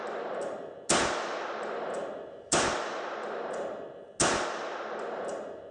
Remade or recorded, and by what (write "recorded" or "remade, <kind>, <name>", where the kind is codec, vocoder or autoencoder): recorded